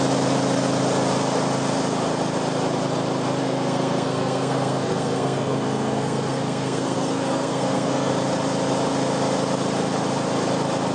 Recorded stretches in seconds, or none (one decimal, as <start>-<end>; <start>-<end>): 0.0-3.4; 8.1-10.9